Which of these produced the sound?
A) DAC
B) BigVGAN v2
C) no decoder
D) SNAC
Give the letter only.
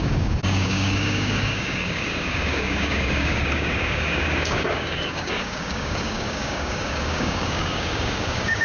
A